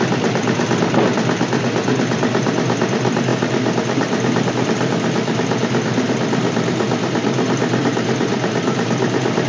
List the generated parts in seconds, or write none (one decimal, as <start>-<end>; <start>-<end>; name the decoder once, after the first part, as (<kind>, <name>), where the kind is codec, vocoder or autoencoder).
none

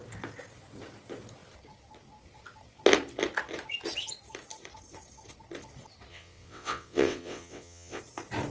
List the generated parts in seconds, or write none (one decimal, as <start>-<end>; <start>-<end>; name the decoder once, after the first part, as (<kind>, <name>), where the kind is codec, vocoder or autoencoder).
6.1-8.0 (vocoder, WaveNeXt)

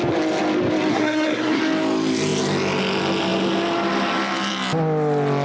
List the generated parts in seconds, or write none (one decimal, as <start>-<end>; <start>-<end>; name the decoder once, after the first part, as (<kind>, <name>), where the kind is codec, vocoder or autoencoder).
0.9-1.6 (codec, SNAC)

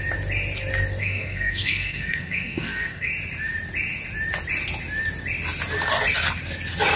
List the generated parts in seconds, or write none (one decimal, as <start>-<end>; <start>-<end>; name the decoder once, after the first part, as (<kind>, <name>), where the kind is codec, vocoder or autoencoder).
1.0-3.1 (codec, SNAC)

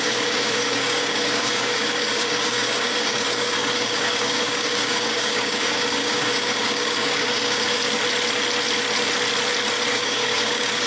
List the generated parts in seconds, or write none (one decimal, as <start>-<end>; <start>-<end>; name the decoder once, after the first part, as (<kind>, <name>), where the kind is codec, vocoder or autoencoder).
0.0-7.8 (codec, DAC); 9.9-10.9